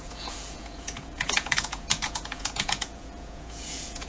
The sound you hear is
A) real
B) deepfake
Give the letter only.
B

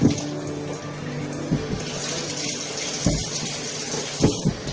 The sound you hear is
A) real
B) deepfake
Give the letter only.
A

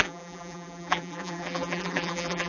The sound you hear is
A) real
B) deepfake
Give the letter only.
B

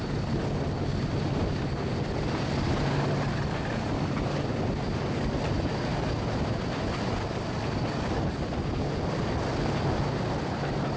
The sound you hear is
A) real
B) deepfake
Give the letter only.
A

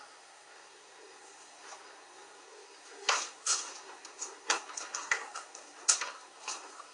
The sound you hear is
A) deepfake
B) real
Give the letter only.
A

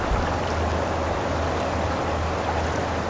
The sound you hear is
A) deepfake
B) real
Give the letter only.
B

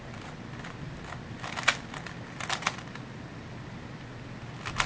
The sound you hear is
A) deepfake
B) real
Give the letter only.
B